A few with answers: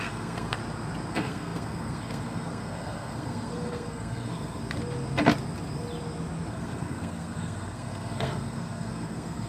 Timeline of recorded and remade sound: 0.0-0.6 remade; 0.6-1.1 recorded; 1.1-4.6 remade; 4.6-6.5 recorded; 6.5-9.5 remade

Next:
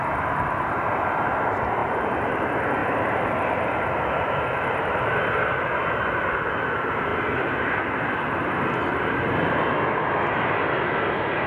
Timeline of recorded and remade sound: 0.0-1.8 recorded; 1.8-2.4 remade; 2.4-2.8 recorded; 2.8-5.1 remade; 5.1-11.5 recorded